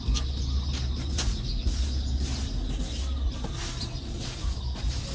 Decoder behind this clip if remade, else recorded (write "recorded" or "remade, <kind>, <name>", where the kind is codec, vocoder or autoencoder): recorded